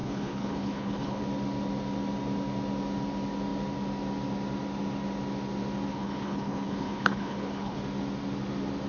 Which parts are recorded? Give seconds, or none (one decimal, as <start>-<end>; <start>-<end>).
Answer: 1.2-5.9; 7.8-8.9